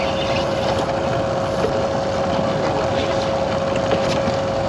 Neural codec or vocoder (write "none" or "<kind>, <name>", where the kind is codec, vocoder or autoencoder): none